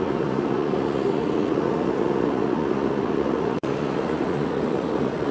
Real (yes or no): no